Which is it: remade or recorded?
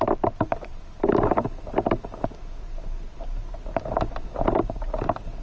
recorded